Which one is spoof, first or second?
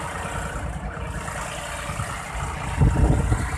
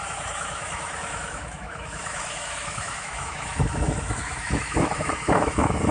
second